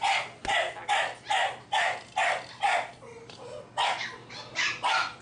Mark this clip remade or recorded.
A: recorded